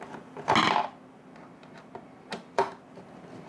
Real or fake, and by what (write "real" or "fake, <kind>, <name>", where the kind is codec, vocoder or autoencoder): real